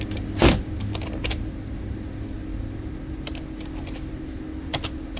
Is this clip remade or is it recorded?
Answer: recorded